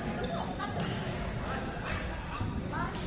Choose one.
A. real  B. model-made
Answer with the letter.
A